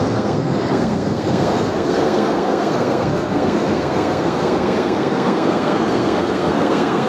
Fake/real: fake